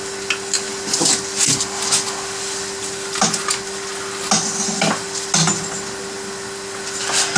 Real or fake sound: real